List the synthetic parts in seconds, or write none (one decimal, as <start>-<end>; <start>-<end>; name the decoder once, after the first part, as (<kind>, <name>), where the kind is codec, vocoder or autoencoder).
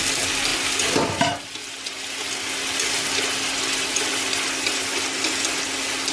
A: none